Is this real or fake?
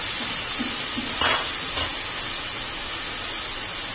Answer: real